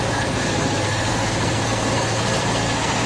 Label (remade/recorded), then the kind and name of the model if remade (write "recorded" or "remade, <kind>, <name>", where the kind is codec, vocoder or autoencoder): remade, codec, SNAC